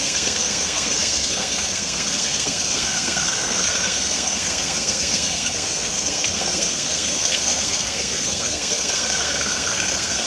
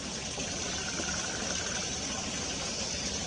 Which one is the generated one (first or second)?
first